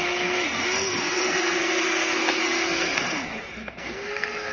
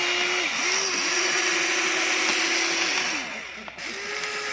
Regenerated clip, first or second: first